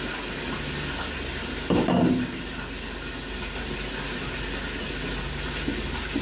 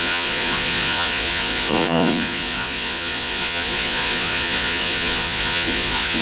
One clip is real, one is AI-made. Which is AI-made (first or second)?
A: second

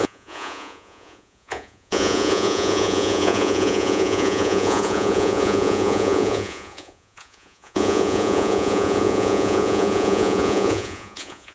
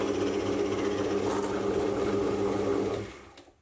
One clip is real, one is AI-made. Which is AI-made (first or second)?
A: first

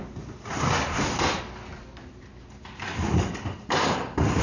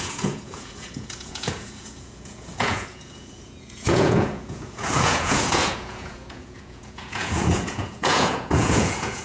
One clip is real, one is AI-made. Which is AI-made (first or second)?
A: second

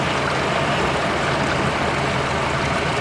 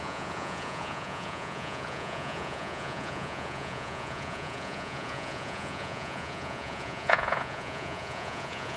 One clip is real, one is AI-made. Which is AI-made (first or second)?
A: second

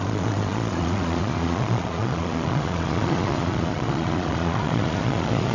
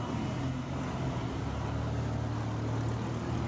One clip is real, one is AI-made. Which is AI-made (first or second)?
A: first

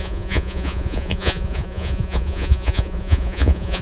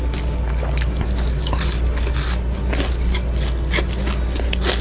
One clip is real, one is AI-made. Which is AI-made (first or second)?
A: first